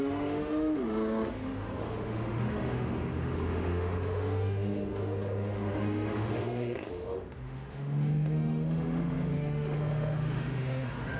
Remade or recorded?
remade